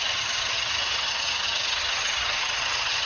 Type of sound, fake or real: fake